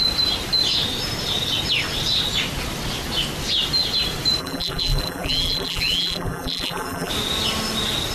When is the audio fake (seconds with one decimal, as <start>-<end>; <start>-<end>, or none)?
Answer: 4.4-7.1